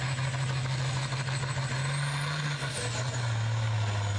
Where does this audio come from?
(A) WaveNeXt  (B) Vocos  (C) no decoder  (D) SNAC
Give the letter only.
C